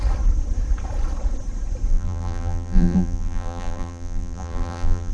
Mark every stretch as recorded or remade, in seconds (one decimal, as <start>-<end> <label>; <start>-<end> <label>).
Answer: 0.0-1.9 recorded; 1.9-5.1 remade